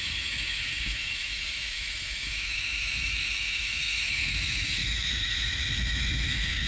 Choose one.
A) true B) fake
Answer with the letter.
B